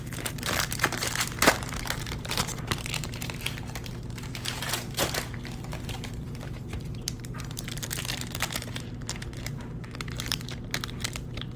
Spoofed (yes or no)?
yes